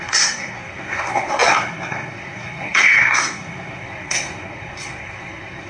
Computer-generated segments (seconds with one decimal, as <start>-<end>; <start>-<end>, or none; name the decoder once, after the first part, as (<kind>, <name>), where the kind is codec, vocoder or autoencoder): 0.0-5.7 (codec, SNAC)